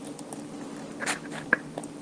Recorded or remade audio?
recorded